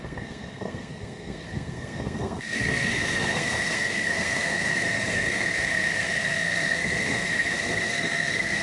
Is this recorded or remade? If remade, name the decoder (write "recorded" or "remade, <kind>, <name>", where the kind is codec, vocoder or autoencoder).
remade, codec, SNAC